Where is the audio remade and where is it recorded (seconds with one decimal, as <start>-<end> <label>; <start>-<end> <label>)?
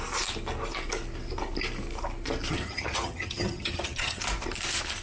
0.0-2.5 recorded; 2.5-4.2 remade; 4.2-5.0 recorded